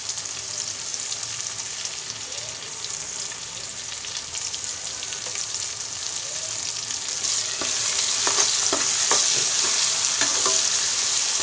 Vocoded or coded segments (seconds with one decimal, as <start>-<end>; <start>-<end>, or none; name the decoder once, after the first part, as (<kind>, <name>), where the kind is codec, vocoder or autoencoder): none